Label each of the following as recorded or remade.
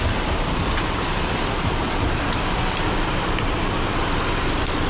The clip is recorded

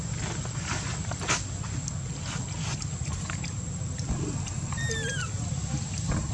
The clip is recorded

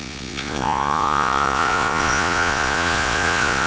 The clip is remade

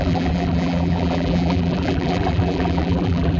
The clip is remade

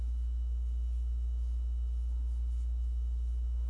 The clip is recorded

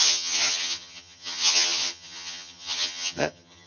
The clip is remade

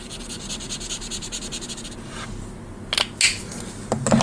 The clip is recorded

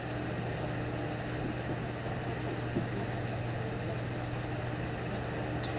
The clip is recorded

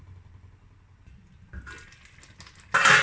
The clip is recorded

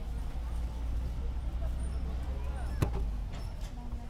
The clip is recorded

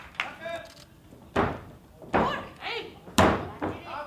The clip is recorded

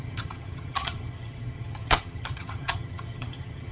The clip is remade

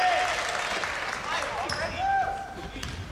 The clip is recorded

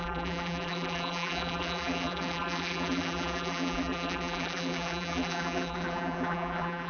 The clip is remade